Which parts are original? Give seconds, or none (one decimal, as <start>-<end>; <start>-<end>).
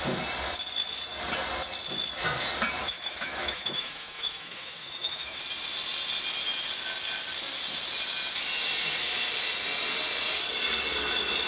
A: 0.0-2.8; 5.4-11.5